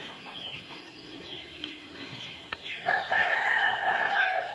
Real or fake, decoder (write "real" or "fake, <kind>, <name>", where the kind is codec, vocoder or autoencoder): fake, codec, SNAC